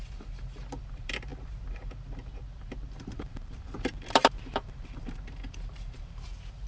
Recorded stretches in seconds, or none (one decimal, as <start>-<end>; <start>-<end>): none